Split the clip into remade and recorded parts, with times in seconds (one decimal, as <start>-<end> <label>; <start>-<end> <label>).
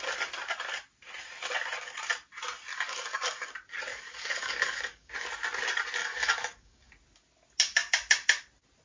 0.0-2.7 recorded; 2.7-3.5 remade; 3.5-3.9 recorded; 3.9-5.1 remade; 5.1-6.0 recorded; 6.0-6.9 remade; 6.9-8.8 recorded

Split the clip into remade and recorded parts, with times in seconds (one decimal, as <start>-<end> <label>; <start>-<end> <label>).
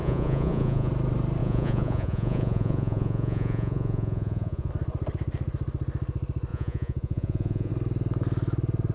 0.0-0.9 remade; 0.9-1.4 recorded; 1.4-4.7 remade; 4.7-6.5 recorded; 6.5-7.7 remade; 7.7-8.9 recorded